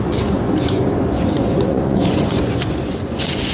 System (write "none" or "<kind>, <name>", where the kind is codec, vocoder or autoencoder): vocoder, Vocos